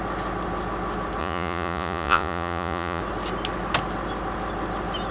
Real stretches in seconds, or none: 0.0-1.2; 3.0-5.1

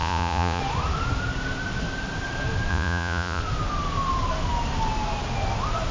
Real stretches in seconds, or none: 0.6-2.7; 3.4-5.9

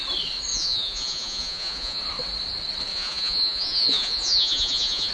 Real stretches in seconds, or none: 0.0-0.5; 2.0-2.9

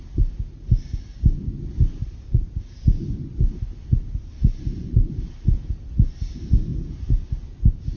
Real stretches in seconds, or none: 0.0-8.0